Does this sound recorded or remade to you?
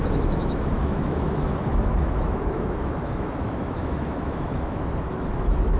remade